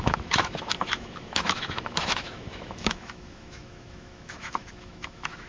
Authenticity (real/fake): fake